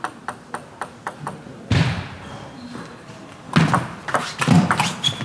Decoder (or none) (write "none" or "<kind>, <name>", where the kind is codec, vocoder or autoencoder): none